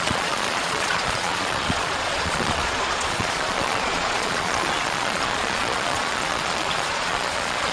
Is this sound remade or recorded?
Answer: remade